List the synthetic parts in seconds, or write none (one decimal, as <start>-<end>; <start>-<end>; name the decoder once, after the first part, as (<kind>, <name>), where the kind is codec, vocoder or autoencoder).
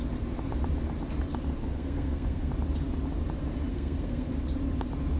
1.6-2.5 (codec, SNAC); 3.7-4.3